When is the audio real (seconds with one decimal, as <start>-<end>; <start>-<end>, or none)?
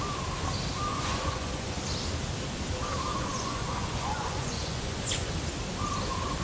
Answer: 0.0-0.9; 1.8-3.1; 5.3-6.4